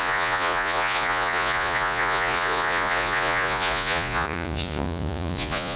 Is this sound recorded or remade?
remade